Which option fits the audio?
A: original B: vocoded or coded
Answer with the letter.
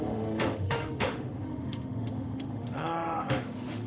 B